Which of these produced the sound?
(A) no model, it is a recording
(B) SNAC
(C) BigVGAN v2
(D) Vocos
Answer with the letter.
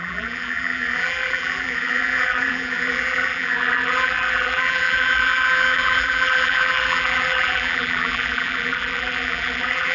C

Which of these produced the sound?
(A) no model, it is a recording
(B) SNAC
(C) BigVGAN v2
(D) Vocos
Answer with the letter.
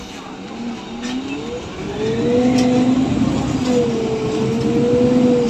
A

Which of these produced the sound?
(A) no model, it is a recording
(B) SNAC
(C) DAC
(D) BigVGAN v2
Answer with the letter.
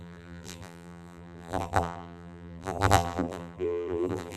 D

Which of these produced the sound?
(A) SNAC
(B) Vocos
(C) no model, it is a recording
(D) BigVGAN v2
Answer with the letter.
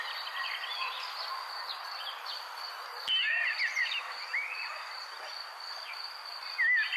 C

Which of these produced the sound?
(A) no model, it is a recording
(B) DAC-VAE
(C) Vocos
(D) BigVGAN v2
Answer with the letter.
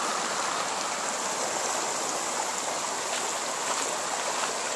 A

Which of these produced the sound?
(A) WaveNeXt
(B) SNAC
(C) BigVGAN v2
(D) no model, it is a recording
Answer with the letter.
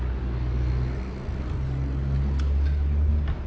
D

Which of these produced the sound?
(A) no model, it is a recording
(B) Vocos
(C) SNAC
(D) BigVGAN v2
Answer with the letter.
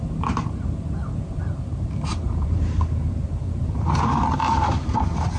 D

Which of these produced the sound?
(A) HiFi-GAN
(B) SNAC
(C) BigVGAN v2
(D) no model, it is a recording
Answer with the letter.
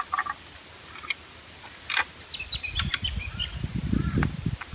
D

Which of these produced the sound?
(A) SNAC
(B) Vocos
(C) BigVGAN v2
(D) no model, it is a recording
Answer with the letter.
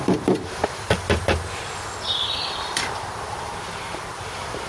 C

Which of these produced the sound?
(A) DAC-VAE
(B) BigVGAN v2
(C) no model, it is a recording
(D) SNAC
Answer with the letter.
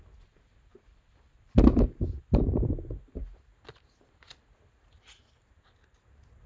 C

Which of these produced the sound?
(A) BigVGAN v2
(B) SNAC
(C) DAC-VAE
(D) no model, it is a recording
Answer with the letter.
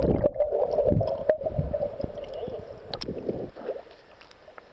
D